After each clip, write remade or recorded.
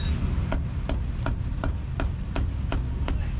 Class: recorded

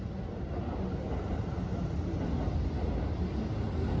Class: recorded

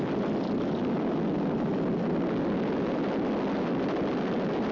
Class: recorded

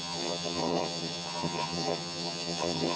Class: remade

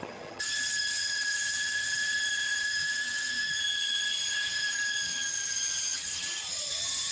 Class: remade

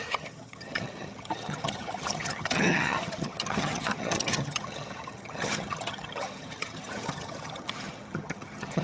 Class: remade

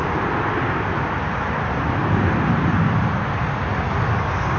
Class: recorded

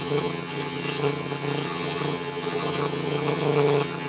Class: remade